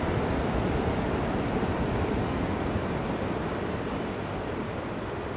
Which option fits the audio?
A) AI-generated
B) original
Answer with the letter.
B